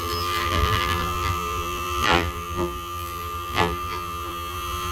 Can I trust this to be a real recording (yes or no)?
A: no